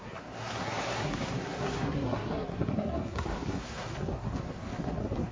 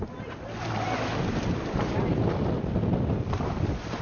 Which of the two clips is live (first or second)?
second